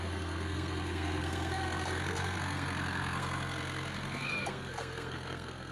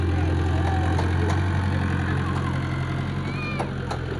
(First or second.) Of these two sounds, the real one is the second